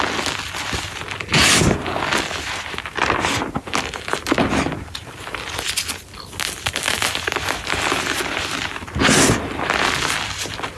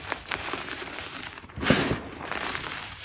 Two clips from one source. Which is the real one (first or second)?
first